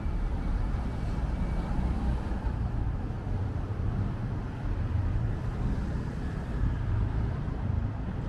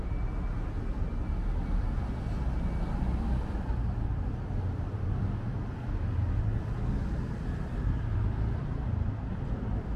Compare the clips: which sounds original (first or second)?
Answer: second